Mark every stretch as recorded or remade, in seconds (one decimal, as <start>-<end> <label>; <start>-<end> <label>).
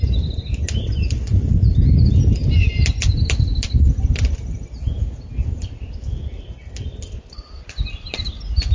0.0-8.7 recorded